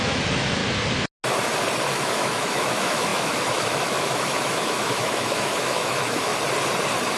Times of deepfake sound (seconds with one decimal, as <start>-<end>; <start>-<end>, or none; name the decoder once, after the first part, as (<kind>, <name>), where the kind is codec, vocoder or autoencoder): 0.0-0.6 (autoencoder, DAC-VAE); 1.9-6.3